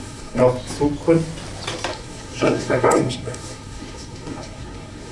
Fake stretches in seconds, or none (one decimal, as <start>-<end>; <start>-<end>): 0.0-0.4; 1.9-5.1